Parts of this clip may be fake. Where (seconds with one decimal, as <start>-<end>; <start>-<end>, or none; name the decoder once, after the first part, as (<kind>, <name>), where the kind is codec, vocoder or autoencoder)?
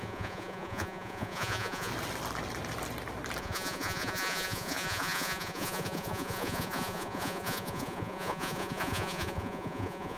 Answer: 0.0-1.9 (vocoder, Vocos); 3.4-10.2